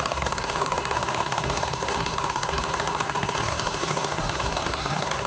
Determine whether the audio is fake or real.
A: fake